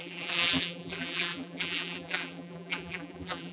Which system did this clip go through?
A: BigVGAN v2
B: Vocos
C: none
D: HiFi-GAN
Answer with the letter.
A